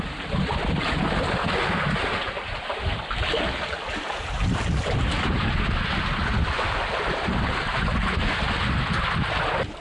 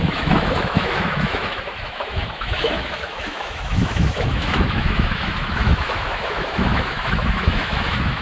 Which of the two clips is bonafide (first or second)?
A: first